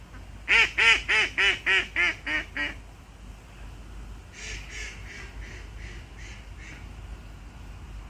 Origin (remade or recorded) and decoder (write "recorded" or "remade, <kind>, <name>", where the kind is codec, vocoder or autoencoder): recorded